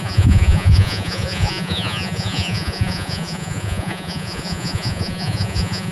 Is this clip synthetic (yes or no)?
yes